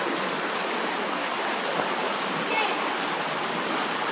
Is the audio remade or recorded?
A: remade